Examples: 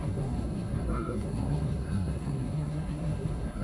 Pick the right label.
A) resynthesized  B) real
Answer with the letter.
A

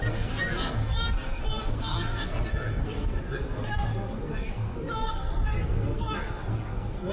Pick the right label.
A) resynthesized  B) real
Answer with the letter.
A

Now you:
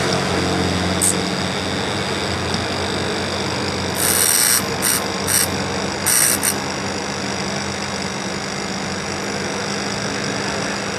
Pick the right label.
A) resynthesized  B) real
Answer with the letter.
B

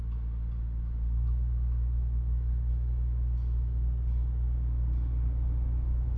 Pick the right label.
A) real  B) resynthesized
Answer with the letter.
A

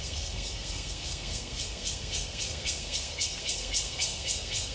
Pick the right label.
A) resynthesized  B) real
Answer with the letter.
A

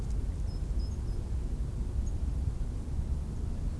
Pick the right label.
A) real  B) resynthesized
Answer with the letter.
A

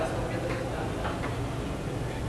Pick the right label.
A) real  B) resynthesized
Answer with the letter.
A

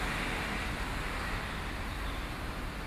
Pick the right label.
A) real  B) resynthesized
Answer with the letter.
A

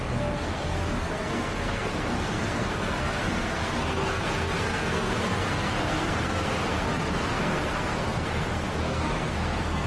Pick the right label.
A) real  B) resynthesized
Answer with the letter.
B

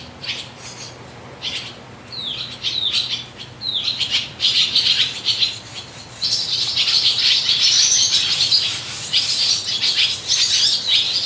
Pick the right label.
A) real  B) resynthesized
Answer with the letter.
A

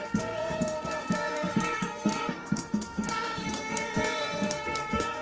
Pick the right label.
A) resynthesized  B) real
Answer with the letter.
A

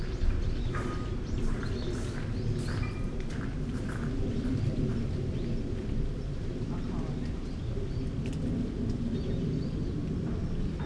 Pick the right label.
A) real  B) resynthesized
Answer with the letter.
A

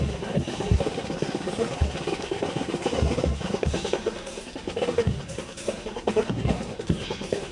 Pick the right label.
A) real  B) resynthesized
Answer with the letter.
B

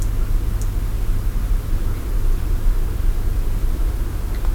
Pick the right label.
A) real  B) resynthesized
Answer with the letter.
A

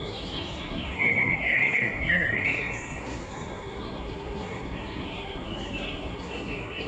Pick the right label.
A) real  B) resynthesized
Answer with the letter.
B